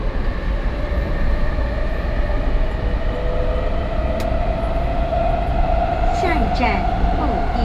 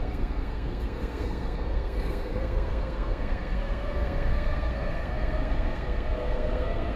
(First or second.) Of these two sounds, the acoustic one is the first